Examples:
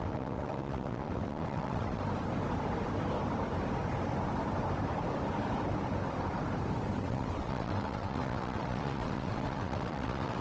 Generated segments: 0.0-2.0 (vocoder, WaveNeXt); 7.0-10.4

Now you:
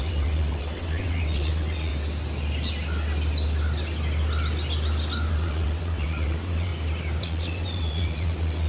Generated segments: 0.0-1.9 (vocoder, WaveNeXt); 5.3-6.7; 7.2-8.7

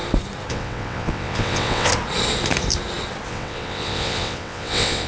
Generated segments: 0.5-1.9 (vocoder, WaveNeXt); 3.3-5.1

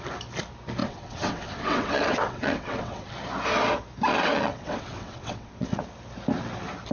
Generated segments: 0.8-3.1 (vocoder, WaveNeXt); 4.1-5.8

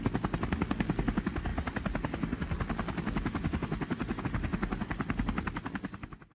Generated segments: none